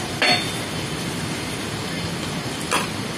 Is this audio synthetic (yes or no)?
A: no